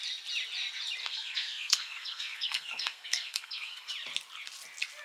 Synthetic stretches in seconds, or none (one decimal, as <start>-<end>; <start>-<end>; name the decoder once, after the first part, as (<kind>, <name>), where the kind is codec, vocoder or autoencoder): 1.0-3.9 (codec, SNAC)